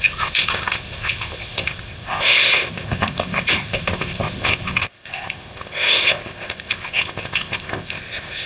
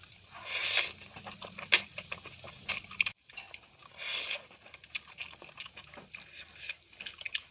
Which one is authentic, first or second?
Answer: second